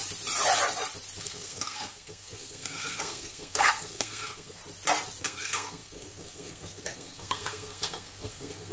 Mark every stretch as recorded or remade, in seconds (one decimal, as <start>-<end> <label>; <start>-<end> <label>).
0.0-1.2 recorded; 1.2-4.6 remade; 4.6-5.2 recorded; 5.2-8.7 remade